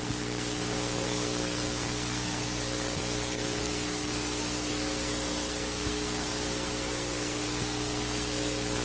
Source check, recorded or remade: remade